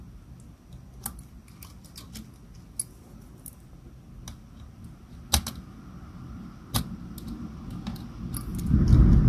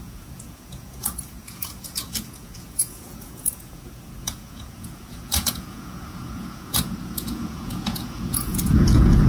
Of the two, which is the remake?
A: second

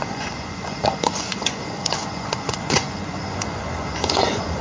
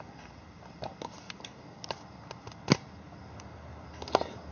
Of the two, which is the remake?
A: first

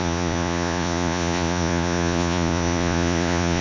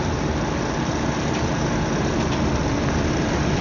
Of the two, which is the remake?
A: first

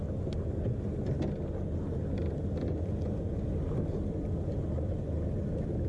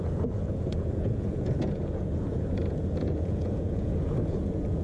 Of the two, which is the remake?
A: second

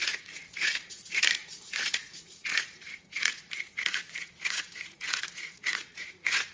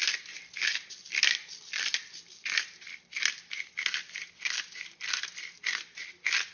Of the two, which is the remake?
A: first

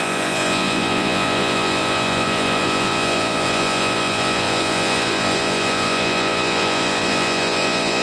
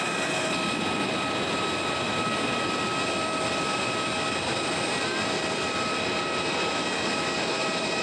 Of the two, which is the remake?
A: first